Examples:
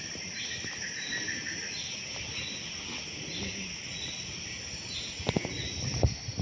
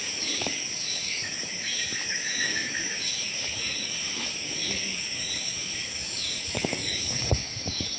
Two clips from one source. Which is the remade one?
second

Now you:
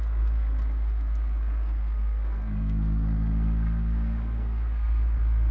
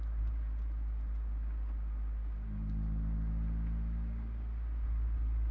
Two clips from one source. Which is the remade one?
first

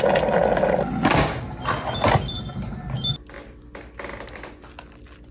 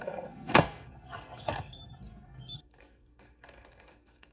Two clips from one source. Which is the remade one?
second